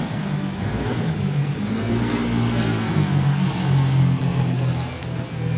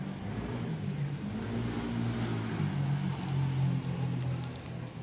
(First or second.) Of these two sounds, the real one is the second